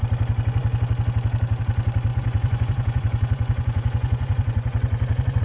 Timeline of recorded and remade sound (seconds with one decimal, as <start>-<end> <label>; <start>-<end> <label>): 0.0-2.1 recorded; 2.1-5.4 remade